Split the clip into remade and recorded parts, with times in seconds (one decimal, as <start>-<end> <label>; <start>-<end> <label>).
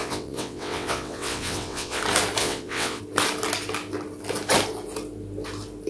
0.0-2.0 remade; 2.0-2.4 recorded; 2.4-3.0 remade; 3.0-5.9 recorded